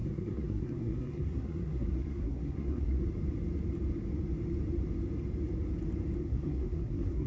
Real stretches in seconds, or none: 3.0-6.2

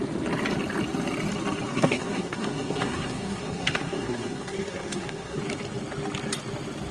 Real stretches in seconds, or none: 0.0-1.7; 5.4-6.9

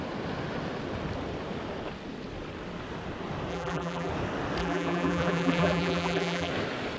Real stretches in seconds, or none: 0.0-3.5; 4.1-4.6; 6.5-7.0